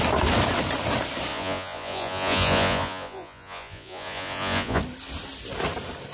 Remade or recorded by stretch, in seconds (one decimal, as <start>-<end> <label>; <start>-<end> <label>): 0.0-1.3 recorded; 1.3-4.8 remade; 4.8-6.1 recorded